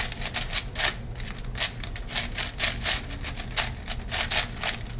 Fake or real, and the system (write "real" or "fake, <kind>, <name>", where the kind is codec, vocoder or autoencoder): real